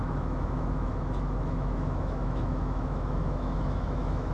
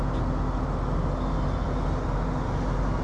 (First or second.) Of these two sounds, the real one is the second